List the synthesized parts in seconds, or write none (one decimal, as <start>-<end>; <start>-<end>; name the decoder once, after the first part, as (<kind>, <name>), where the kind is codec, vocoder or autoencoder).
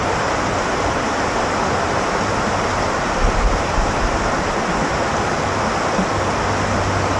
0.0-4.8 (vocoder, BigVGAN v2)